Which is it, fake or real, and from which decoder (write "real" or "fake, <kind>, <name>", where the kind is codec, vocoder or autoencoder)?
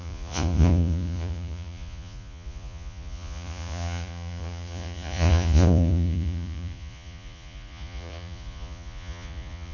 fake, vocoder, Vocos